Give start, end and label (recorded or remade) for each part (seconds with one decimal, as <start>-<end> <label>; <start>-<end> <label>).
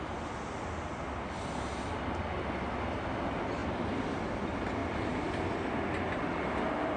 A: 0.0-7.0 recorded